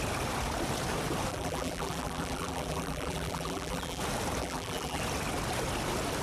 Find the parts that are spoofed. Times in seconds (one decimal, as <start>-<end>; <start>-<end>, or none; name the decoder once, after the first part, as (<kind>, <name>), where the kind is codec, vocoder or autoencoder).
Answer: 1.3-4.0 (vocoder, BigVGAN v2); 4.4-5.0